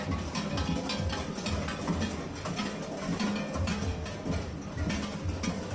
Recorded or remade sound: recorded